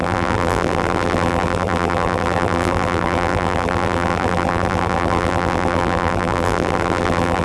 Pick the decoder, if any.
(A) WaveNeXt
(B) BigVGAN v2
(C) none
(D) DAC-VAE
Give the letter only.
B